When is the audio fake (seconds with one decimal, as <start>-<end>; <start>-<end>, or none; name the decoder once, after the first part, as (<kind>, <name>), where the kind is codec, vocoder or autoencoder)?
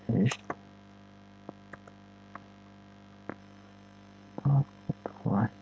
0.0-0.4 (autoencoder, DAC-VAE); 3.4-5.6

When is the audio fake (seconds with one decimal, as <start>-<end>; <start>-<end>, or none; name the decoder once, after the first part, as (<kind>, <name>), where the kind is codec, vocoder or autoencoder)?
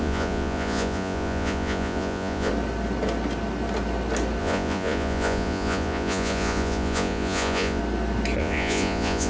0.0-2.5 (vocoder, Vocos); 4.4-7.8; 8.4-9.3